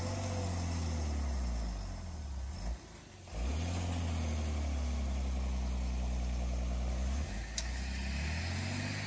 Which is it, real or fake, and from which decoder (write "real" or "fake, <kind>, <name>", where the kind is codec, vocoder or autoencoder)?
real